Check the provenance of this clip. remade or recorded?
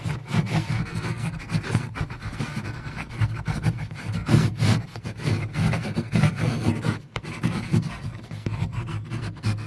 remade